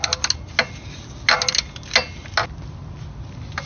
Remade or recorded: recorded